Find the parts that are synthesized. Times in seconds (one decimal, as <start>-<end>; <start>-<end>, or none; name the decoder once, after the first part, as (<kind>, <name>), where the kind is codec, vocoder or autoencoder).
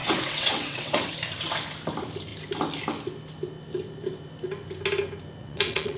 0.0-1.1 (vocoder, WaveNeXt); 5.4-6.0